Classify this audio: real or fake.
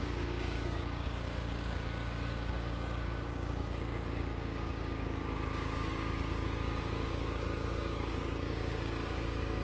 fake